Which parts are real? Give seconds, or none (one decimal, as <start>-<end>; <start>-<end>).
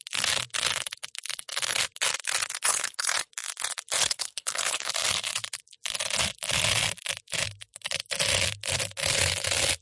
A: 0.0-2.6; 3.3-4.0; 4.9-9.8